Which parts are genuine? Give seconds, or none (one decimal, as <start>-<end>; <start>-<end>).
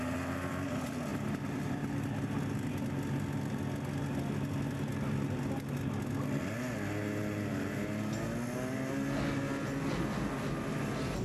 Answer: 0.0-11.2